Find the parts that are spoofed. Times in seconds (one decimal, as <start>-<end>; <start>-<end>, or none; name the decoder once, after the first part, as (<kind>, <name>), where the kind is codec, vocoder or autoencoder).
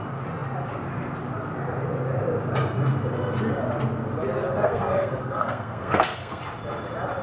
4.4-6.4 (codec, SNAC)